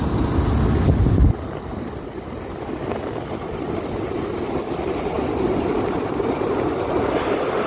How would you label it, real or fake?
real